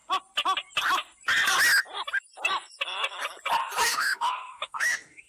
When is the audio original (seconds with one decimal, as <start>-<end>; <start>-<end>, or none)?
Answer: 0.0-3.9

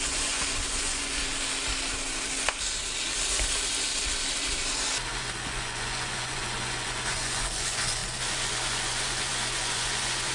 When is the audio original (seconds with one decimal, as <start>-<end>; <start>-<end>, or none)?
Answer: 1.2-5.1

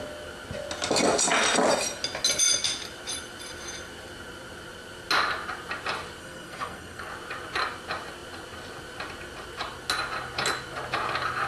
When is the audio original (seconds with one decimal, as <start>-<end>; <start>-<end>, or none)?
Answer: 0.0-6.2; 7.1-11.5

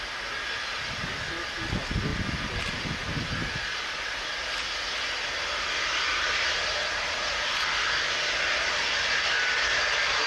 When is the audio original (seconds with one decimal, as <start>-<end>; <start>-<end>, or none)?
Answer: 0.0-3.4; 4.3-6.1; 7.3-10.3

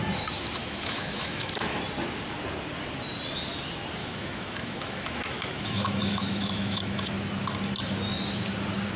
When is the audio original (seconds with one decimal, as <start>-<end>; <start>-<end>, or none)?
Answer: 0.0-0.6; 1.8-4.0; 7.1-9.0

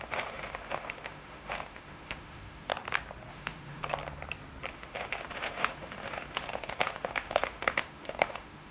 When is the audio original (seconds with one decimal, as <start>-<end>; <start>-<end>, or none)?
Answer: 2.7-3.3; 3.8-4.7

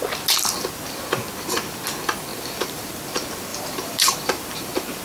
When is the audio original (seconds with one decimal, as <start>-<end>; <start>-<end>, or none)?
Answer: 0.0-2.3; 3.0-3.5